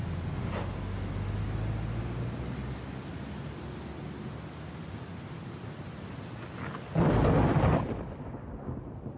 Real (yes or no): yes